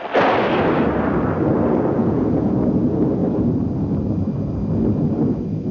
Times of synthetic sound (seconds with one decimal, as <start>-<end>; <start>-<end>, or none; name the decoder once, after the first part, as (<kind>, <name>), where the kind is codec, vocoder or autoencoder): 2.0-2.5 (vocoder, Vocos)